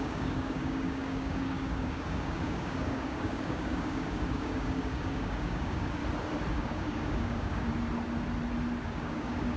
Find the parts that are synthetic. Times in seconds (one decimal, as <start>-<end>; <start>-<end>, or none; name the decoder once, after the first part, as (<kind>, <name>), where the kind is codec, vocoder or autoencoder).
0.0-6.0 (codec, DAC); 6.5-7.7; 8.8-9.6